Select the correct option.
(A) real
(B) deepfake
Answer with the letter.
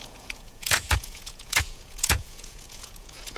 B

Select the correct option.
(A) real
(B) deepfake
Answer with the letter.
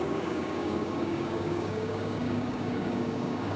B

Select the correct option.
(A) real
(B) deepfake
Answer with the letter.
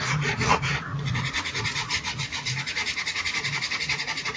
B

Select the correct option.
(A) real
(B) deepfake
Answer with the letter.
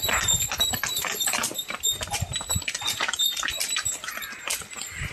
A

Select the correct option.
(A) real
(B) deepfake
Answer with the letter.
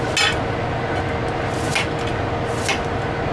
A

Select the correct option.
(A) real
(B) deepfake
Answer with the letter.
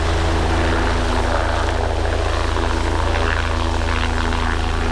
A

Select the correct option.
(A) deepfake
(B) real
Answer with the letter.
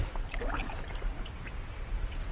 B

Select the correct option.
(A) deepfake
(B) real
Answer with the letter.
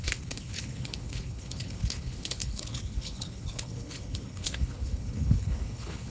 A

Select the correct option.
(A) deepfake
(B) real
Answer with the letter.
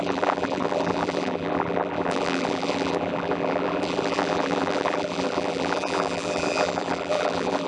A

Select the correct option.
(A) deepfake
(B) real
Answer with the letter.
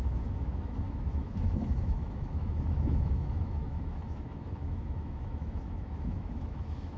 A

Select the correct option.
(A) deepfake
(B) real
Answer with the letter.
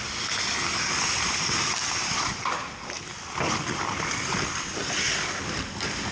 B